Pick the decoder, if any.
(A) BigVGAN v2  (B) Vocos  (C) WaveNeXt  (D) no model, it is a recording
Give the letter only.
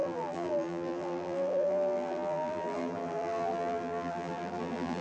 A